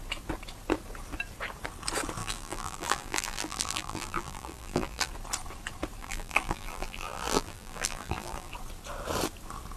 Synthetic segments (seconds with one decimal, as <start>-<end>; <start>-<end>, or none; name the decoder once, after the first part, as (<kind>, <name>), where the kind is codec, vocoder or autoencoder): 2.2-5.1 (vocoder, BigVGAN v2); 6.0-8.5